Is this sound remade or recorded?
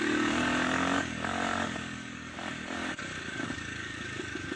remade